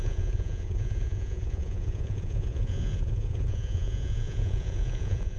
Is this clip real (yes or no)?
no